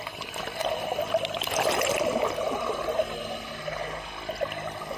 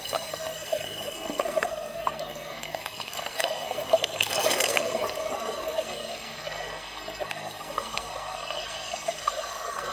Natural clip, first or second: first